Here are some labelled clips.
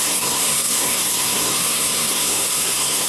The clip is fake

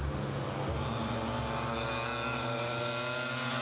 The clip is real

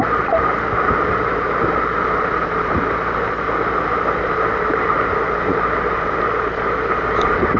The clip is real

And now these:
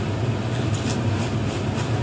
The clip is real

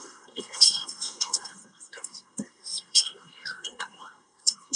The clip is fake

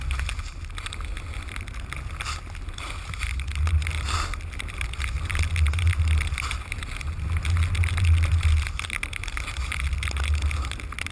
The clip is real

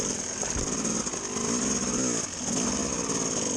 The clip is real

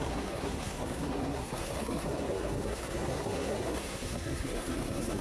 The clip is fake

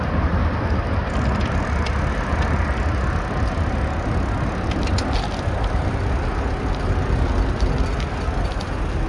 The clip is real